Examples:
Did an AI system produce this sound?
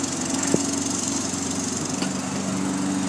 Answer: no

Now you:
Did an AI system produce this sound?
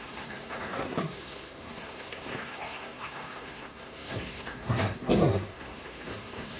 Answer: yes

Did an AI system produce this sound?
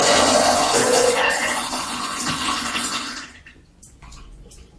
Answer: yes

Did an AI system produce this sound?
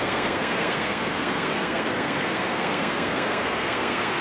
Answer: yes